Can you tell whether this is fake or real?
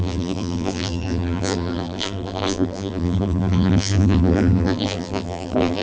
fake